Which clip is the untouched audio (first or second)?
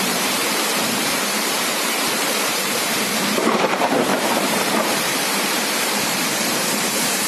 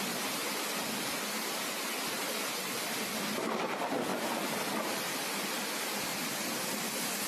second